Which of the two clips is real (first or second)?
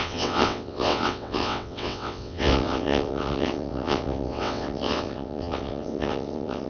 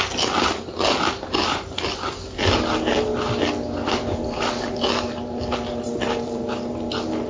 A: second